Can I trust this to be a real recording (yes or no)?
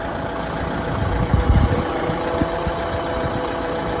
no